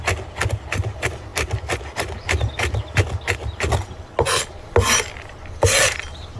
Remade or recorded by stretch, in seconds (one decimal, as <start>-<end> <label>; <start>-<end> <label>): 0.0-6.4 recorded